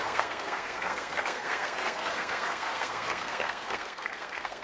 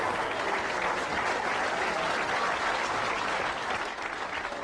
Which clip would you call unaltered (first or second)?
second